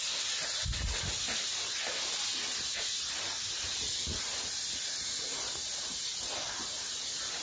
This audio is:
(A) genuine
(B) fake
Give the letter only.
A